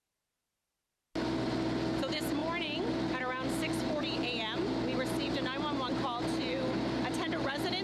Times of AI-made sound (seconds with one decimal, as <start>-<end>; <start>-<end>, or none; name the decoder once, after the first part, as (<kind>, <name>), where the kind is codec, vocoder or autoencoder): none